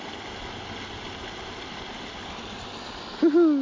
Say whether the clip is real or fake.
real